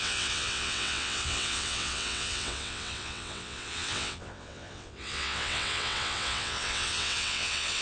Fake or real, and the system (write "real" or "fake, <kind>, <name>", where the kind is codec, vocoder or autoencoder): fake, vocoder, WaveNeXt